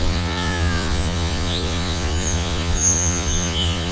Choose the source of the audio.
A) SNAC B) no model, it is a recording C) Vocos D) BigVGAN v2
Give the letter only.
C